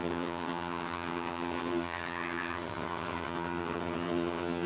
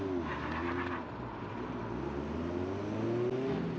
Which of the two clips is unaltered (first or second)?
second